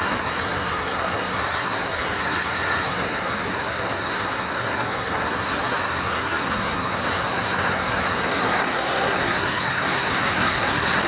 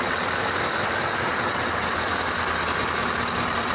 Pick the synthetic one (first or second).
first